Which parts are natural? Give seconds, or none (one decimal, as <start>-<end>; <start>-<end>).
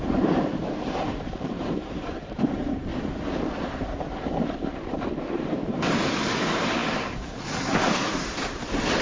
2.9-5.1